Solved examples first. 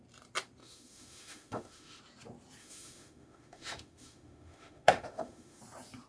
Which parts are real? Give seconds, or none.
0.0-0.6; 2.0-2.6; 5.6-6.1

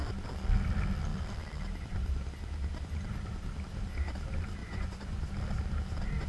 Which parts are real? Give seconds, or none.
0.0-4.6; 5.3-6.3

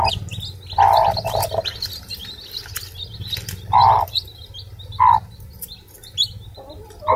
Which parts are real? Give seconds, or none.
0.0-7.2